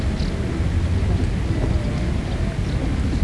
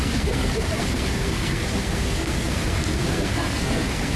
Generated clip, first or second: second